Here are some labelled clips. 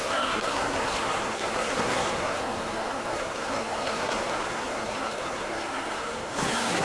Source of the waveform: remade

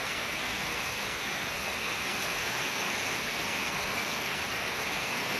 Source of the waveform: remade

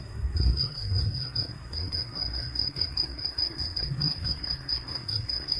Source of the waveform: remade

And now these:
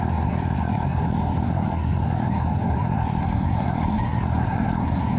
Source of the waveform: remade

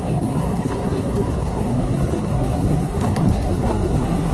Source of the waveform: remade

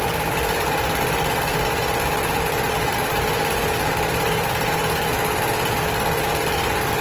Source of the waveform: recorded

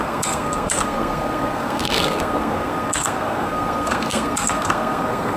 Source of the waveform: remade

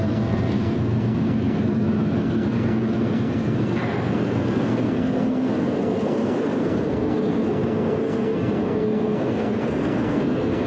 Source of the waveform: remade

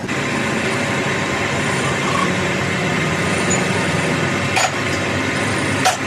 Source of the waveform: recorded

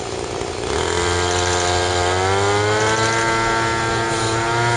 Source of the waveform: recorded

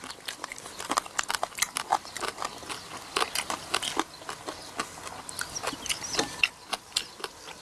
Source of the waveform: recorded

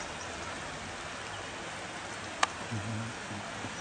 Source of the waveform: recorded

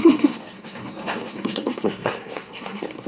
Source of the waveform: remade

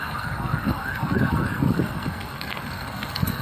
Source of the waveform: remade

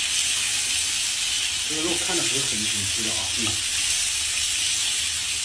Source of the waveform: recorded